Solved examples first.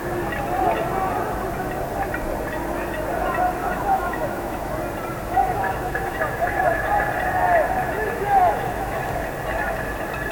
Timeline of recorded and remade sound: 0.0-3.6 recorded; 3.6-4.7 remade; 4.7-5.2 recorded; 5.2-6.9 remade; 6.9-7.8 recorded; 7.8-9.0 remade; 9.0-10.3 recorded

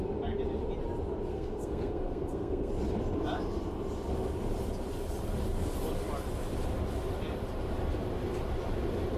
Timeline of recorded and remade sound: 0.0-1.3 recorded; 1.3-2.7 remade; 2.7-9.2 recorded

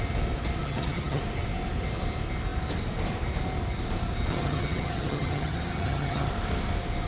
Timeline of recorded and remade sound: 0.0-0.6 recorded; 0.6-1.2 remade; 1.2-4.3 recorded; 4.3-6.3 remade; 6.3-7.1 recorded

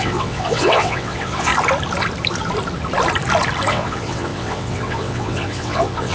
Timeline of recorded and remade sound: 0.0-1.5 remade; 1.5-3.7 recorded; 3.7-6.1 remade

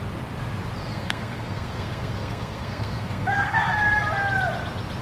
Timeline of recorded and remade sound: 0.0-0.8 recorded; 0.8-3.8 remade; 3.8-5.0 recorded

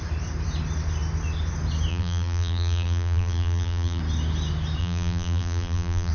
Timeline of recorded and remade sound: 0.0-1.9 recorded; 1.9-4.0 remade; 4.0-4.8 recorded; 4.8-6.1 remade